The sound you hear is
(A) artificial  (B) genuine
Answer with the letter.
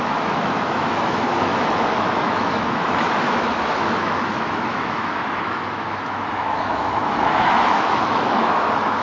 A